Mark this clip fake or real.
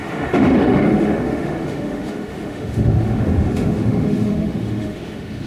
fake